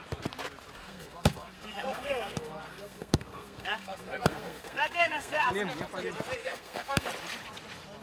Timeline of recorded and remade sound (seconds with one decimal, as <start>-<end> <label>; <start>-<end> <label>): 0.0-0.8 recorded; 0.8-5.5 remade; 5.5-6.4 recorded; 6.4-7.1 remade; 7.1-8.0 recorded